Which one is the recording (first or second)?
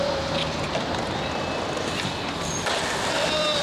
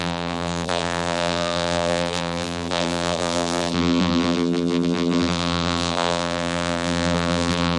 first